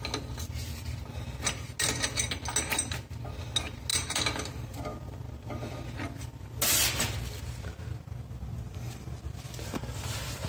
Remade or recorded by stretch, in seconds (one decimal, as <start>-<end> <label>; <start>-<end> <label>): 0.0-3.9 recorded; 3.9-5.7 remade; 5.7-10.5 recorded